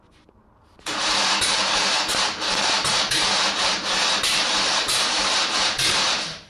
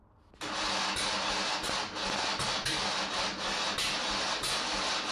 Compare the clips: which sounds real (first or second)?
second